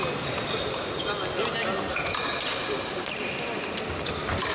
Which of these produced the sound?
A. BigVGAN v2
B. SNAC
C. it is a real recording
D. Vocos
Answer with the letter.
C